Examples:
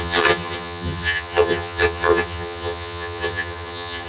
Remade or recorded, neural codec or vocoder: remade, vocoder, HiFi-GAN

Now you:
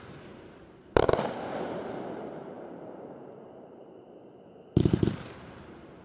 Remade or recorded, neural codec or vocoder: remade, vocoder, BigVGAN v2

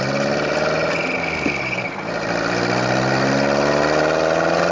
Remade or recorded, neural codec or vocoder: recorded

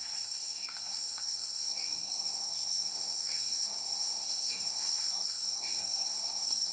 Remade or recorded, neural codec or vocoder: remade, codec, SNAC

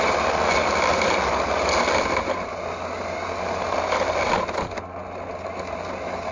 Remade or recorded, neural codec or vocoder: recorded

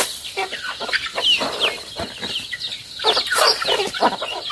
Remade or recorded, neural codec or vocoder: recorded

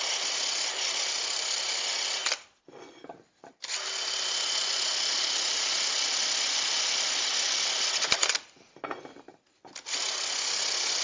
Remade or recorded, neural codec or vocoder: recorded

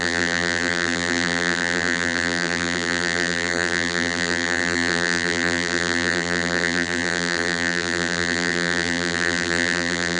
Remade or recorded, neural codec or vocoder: remade, vocoder, BigVGAN v2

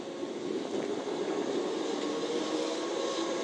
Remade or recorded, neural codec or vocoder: recorded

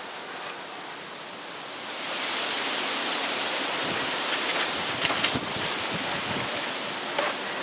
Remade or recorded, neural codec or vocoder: recorded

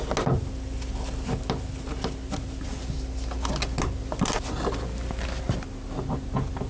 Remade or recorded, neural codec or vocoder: recorded